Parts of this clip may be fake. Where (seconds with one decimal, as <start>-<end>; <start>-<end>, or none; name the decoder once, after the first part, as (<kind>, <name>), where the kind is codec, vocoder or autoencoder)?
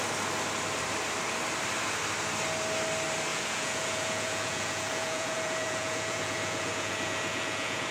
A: 3.3-7.9 (vocoder, Vocos)